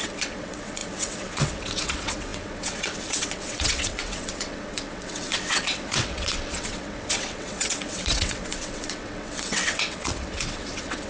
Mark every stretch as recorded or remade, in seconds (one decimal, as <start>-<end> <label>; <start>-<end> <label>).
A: 0.0-11.1 remade